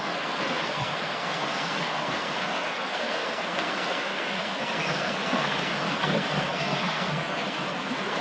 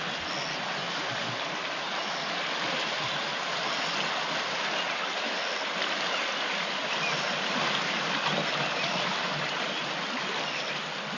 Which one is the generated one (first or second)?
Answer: first